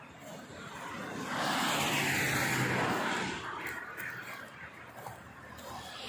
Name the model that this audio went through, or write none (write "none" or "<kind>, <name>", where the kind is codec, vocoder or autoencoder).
none